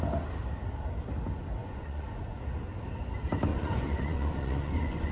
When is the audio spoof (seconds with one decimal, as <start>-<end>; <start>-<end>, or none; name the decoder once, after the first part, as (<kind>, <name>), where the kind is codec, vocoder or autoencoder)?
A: 1.6-2.4 (vocoder, Vocos); 3.5-5.1